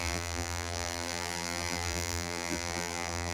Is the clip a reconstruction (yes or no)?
yes